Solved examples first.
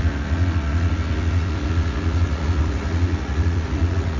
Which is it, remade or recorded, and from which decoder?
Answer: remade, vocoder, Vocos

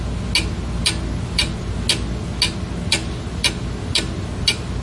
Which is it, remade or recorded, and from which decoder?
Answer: recorded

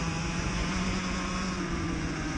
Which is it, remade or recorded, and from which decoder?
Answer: remade, vocoder, Vocos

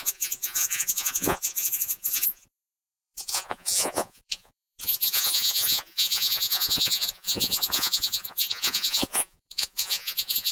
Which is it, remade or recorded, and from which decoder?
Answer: remade, vocoder, Vocos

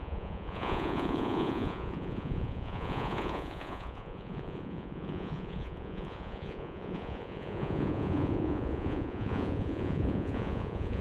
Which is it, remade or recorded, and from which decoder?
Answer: remade, vocoder, Vocos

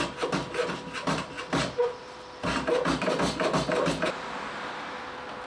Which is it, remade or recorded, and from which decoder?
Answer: recorded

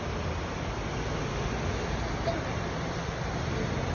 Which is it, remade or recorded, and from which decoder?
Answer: recorded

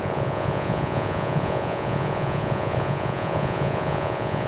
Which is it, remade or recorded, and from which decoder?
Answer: remade, vocoder, Vocos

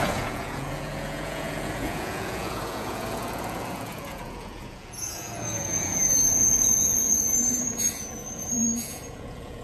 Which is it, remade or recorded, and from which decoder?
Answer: remade, vocoder, Vocos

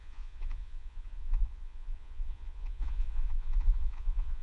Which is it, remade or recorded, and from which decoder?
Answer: remade, vocoder, Vocos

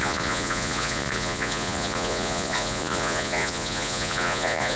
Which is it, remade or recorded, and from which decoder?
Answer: remade, vocoder, Vocos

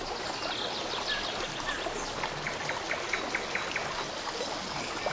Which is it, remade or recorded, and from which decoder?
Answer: recorded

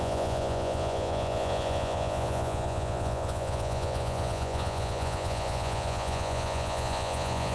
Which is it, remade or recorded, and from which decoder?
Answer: remade, vocoder, Vocos